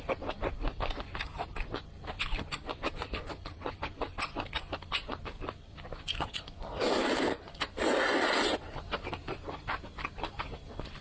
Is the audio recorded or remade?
remade